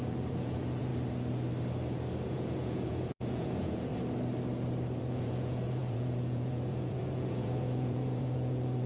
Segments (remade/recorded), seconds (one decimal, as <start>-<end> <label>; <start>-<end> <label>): 0.0-0.9 remade; 0.9-2.2 recorded; 2.2-3.9 remade; 3.9-5.0 recorded; 5.0-8.9 remade